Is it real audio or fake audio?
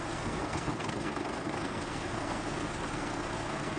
fake